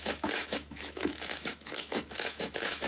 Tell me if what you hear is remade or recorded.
remade